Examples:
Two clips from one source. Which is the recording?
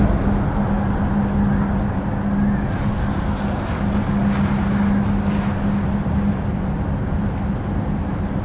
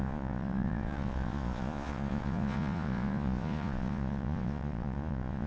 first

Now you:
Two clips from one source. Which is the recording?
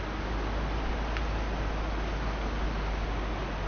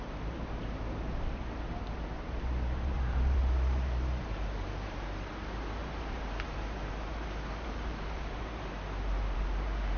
first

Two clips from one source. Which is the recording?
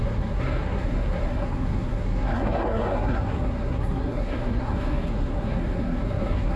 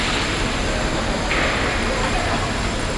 second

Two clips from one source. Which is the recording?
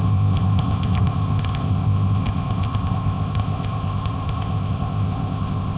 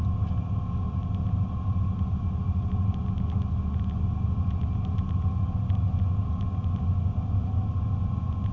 second